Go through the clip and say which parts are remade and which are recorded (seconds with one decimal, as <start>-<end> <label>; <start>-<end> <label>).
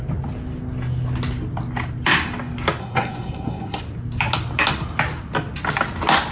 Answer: 0.0-2.8 recorded; 2.8-3.8 remade; 3.8-6.3 recorded